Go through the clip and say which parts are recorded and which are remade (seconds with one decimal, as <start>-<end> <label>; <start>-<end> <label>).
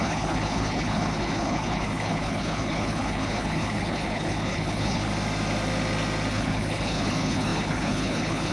0.0-5.1 remade; 5.1-6.3 recorded; 6.3-8.5 remade